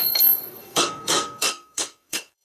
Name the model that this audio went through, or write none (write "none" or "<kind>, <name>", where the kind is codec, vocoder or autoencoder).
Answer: codec, SNAC